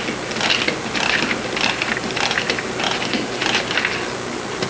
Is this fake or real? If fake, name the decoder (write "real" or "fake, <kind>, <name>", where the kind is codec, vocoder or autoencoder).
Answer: real